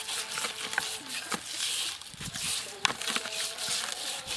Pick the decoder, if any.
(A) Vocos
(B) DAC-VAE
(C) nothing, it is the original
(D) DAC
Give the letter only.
C